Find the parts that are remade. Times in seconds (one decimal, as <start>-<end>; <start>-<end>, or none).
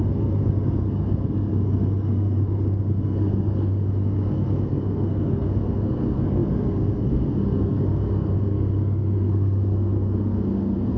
0.0-11.0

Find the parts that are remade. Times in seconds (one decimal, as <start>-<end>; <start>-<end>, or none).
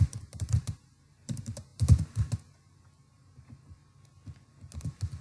0.0-3.8